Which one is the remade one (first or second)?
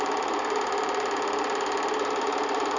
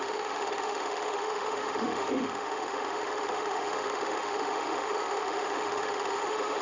second